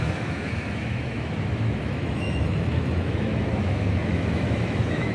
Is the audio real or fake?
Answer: fake